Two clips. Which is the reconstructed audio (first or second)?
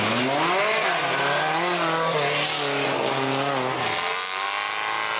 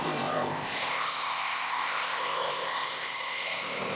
second